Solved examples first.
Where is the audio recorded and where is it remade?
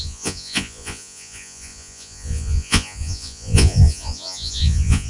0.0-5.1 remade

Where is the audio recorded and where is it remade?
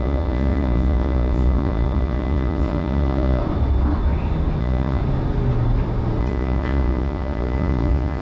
0.0-3.4 remade; 3.4-4.6 recorded; 4.6-5.0 remade; 5.0-6.2 recorded; 6.2-8.2 remade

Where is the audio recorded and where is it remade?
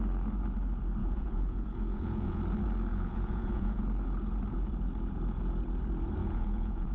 0.0-1.0 recorded; 1.0-2.4 remade; 2.4-2.9 recorded; 2.9-3.8 remade; 3.8-6.2 recorded; 6.2-6.9 remade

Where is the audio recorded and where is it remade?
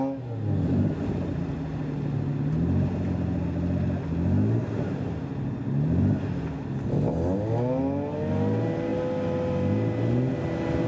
0.0-10.9 recorded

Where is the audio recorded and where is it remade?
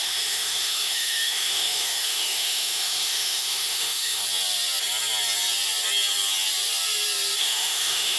0.0-4.2 remade; 4.2-7.4 recorded; 7.4-8.2 remade